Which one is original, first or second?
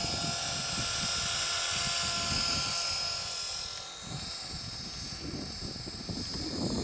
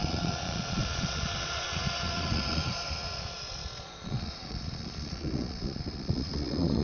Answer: first